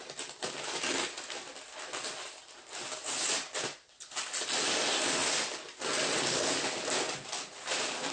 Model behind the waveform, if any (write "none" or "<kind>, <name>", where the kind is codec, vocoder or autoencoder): none